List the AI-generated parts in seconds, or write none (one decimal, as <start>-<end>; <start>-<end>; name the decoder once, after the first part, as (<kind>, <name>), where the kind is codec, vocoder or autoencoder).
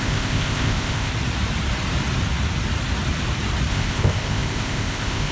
0.0-1.1 (codec, ZipCodec); 3.7-5.3